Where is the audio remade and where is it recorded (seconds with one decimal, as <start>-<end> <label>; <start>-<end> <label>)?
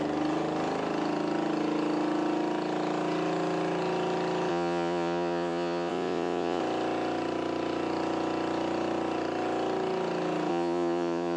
0.0-4.5 recorded; 4.5-6.6 remade; 6.6-10.5 recorded; 10.5-11.4 remade